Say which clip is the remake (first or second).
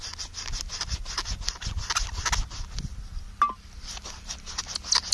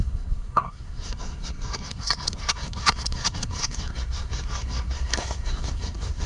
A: second